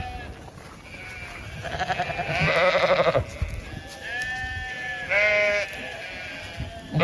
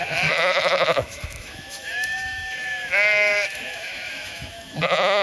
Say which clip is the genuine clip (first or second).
first